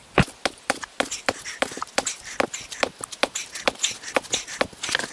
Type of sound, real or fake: real